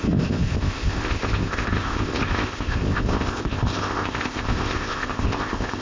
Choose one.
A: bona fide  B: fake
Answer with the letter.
B